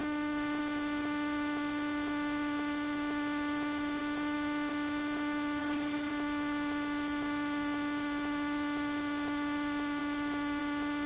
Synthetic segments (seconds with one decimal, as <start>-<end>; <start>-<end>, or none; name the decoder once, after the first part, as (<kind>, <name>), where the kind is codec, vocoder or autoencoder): 5.6-6.1 (codec, HILCodec)

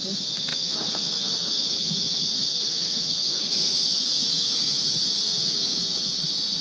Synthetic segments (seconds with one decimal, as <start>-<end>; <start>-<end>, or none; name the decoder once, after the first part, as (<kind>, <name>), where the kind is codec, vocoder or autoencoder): 0.0-6.6 (autoencoder, DAC-VAE)

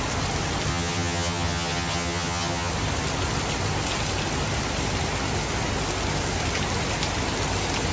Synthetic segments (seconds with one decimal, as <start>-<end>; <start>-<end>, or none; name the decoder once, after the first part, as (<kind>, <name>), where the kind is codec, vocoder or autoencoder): 0.7-2.7 (vocoder, HiFi-GAN)

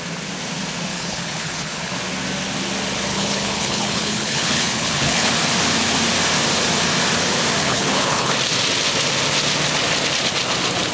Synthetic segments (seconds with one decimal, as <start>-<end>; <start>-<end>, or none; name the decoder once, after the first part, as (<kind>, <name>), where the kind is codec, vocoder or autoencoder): 0.9-1.9 (codec, HILCodec); 3.1-5.3; 7.6-8.3

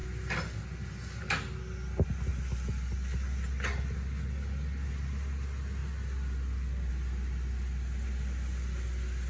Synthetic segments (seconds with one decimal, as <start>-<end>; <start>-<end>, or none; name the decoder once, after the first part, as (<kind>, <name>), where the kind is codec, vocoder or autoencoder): none

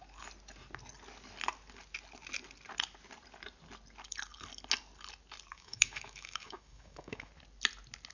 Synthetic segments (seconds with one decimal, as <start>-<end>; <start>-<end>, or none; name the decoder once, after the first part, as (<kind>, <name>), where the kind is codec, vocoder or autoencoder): 5.5-7.3 (autoencoder, DAC-VAE)

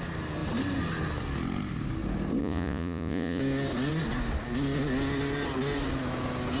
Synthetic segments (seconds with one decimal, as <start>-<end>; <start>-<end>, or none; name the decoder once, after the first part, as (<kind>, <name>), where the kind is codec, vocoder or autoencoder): 2.4-3.4 (vocoder, Vocos)